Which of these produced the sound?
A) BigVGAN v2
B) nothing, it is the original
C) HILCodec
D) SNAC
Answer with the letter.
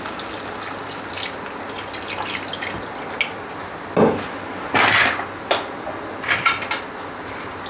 B